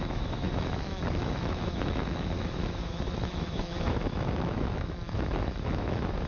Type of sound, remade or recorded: remade